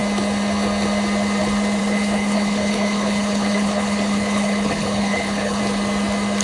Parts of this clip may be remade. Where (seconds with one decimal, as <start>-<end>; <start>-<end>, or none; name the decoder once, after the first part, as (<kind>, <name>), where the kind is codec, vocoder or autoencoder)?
1.8-5.6 (codec, HILCodec)